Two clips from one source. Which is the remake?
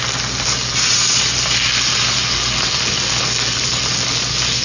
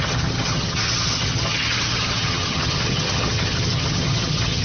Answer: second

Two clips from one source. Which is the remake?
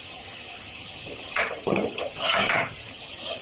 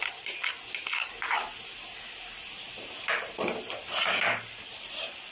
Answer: first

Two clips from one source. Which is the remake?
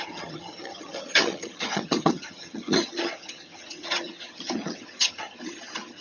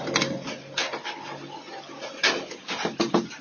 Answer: first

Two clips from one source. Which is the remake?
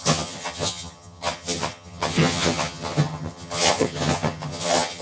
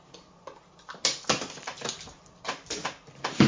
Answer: first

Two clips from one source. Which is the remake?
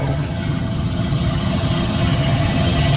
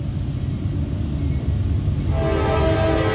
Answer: first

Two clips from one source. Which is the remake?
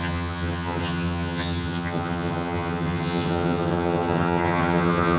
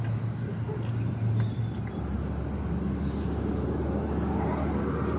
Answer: first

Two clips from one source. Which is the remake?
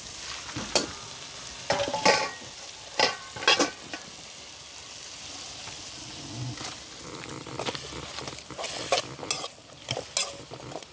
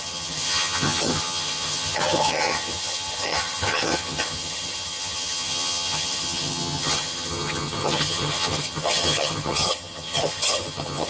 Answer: second